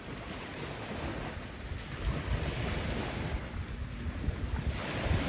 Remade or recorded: recorded